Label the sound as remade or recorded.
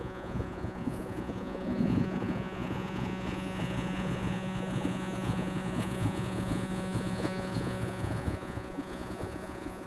remade